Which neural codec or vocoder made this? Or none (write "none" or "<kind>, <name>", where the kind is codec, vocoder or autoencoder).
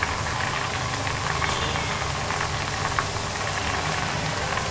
none